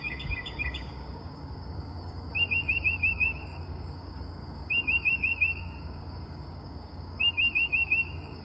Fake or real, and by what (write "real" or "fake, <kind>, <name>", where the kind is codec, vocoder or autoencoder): fake, codec, DAC